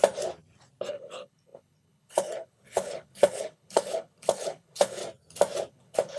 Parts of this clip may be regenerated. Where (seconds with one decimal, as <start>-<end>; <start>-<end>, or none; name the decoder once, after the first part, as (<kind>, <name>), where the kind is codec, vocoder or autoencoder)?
0.9-5.0 (codec, HILCodec); 5.7-6.2